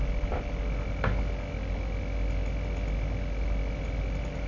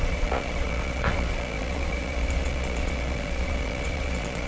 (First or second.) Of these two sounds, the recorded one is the first